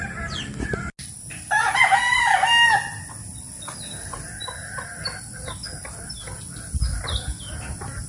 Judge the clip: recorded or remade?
recorded